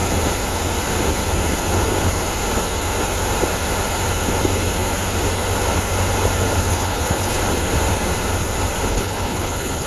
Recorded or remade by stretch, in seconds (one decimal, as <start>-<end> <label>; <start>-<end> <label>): 0.0-6.7 recorded; 6.7-7.4 remade; 7.4-8.9 recorded; 8.9-9.9 remade